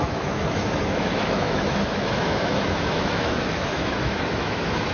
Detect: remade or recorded remade